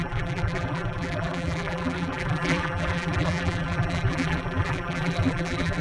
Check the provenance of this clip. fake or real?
fake